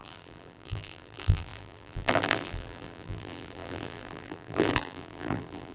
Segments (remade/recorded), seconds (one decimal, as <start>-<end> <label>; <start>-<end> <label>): 0.0-5.7 remade